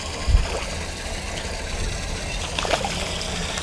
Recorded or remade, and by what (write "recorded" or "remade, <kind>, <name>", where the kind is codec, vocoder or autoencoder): recorded